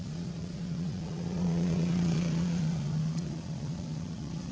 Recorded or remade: remade